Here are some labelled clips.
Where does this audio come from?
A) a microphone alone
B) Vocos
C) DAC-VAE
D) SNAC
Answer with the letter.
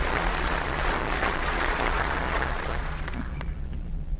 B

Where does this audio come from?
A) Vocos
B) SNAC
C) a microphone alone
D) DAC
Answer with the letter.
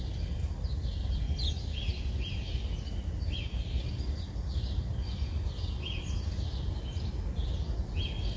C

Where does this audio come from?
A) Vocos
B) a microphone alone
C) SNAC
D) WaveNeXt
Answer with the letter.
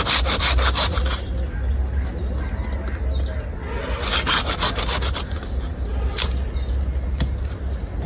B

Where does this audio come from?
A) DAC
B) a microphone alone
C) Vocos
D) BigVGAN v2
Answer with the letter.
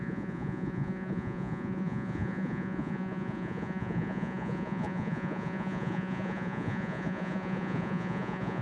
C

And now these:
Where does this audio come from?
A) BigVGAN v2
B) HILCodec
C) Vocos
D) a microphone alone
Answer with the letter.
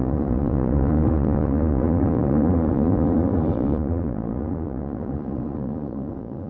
C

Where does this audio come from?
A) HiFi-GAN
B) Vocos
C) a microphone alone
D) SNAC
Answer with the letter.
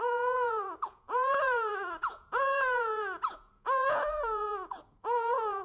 B